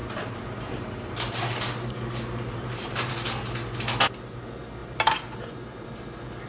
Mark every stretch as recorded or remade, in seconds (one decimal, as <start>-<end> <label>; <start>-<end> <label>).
0.0-3.1 remade; 3.1-4.8 recorded; 4.8-6.0 remade; 6.0-6.5 recorded